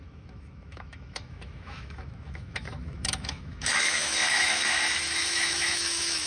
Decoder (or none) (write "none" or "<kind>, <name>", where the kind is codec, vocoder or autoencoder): autoencoder, DAC-VAE